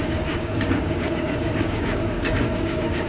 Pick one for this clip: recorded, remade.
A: remade